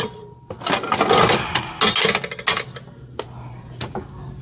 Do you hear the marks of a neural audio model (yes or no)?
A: no